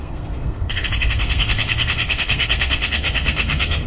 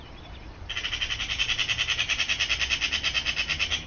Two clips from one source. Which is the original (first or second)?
second